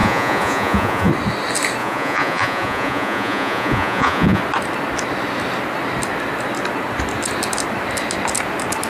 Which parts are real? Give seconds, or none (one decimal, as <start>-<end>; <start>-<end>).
1.1-1.8; 4.4-8.9